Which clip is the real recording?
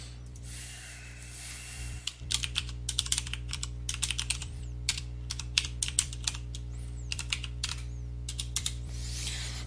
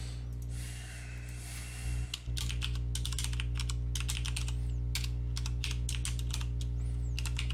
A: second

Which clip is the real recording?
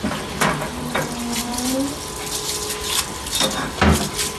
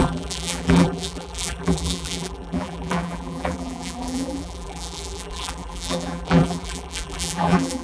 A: first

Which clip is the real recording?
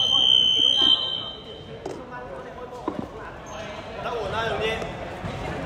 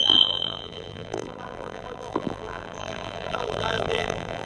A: first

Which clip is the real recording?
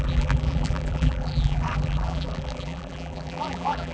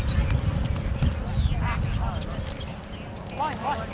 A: second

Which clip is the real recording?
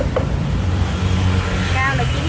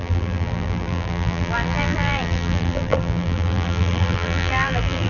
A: first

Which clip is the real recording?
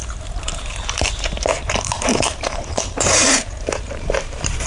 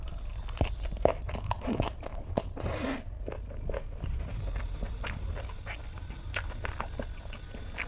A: second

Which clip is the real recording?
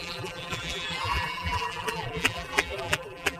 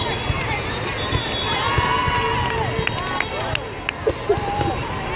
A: second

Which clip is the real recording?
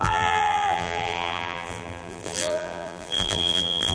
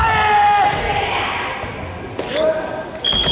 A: second